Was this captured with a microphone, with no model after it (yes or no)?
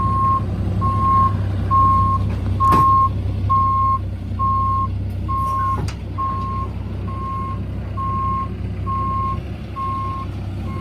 yes